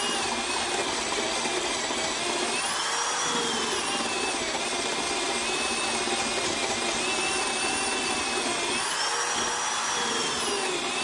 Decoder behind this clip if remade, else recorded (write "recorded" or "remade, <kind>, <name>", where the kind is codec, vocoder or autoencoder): recorded